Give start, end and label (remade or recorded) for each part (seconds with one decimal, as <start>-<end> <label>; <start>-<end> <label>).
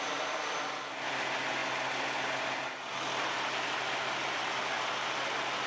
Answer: 0.0-5.7 recorded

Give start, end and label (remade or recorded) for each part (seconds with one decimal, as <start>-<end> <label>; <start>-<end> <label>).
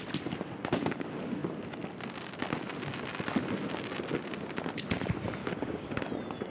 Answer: 0.0-5.4 recorded; 5.4-6.0 remade; 6.0-6.5 recorded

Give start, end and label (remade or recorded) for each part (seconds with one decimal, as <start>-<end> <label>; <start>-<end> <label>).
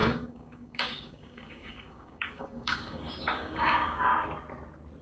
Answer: 0.0-4.1 remade; 4.1-5.0 recorded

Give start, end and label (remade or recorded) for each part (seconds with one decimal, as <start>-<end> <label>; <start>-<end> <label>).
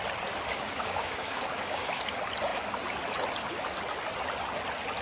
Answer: 0.0-0.5 recorded; 0.5-2.0 remade; 2.0-5.0 recorded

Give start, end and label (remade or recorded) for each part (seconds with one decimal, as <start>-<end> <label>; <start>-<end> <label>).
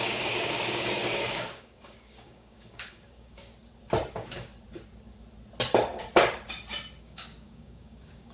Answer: 0.0-3.5 remade; 3.5-4.1 recorded; 4.1-4.5 remade; 4.5-7.0 recorded; 7.0-8.3 remade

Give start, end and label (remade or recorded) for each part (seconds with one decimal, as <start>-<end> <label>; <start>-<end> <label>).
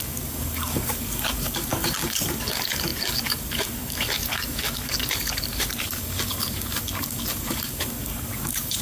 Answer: 0.0-8.8 remade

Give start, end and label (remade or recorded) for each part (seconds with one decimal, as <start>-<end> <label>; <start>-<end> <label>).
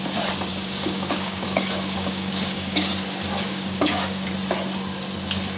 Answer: 0.0-0.5 recorded; 0.5-2.9 remade; 2.9-3.5 recorded; 3.5-4.3 remade; 4.3-5.6 recorded